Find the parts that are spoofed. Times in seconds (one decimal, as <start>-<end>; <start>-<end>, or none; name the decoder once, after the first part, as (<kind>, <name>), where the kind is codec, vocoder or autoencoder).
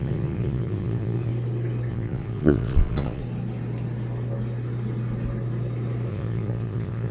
0.0-1.3 (vocoder, Vocos); 1.9-3.2; 6.1-7.1